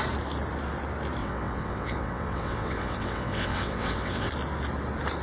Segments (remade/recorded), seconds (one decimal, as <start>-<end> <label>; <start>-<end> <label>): 0.0-1.2 recorded; 1.2-4.3 remade; 4.3-5.2 recorded

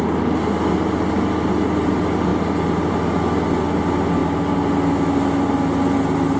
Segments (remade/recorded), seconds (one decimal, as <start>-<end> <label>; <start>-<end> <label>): 0.0-6.4 recorded

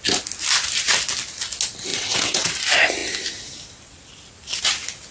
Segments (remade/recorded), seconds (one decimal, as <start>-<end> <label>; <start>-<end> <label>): 0.0-1.9 recorded; 1.9-2.5 remade; 2.5-5.1 recorded

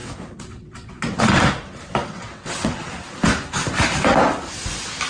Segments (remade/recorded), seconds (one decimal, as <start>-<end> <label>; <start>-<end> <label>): 0.0-1.2 remade; 1.2-2.1 recorded; 2.1-2.9 remade; 2.9-5.1 recorded

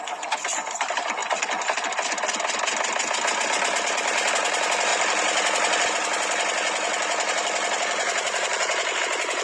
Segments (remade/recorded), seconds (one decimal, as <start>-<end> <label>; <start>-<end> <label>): 0.0-9.4 recorded

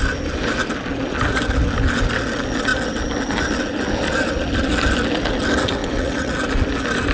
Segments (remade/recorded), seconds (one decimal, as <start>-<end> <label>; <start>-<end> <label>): 0.0-5.8 recorded; 5.8-6.3 remade; 6.3-7.1 recorded